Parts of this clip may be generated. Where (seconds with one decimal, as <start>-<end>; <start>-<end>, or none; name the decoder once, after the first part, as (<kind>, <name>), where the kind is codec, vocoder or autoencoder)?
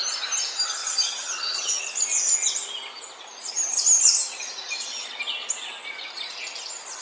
0.8-1.8 (vocoder, HiFi-GAN); 3.5-4.1